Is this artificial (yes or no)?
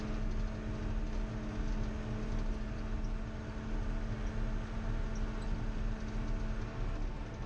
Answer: no